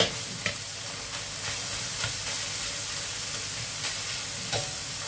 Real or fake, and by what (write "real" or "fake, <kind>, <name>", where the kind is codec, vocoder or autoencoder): real